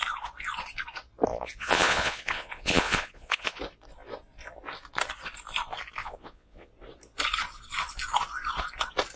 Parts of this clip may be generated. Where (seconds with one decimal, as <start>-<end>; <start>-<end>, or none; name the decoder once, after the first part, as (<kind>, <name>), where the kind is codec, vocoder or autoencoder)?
1.3-3.6 (vocoder, Vocos); 6.0-6.7